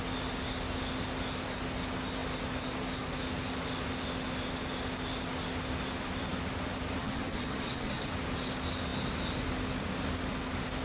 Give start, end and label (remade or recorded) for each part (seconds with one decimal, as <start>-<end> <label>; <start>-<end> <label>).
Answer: 0.0-7.0 recorded; 7.0-8.1 remade; 8.1-10.8 recorded